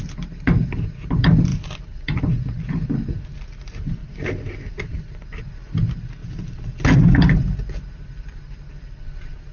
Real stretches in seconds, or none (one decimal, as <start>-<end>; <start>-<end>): 0.0-1.5; 2.6-4.0; 5.4-6.2; 6.8-9.5